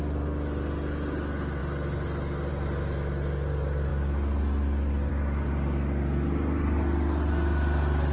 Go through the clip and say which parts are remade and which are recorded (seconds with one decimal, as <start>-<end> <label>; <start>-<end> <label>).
0.0-8.1 recorded